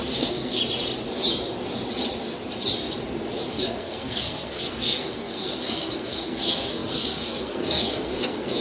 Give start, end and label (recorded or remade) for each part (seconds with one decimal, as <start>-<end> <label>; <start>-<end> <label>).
0.0-0.6 remade; 0.6-3.5 recorded; 3.5-8.6 remade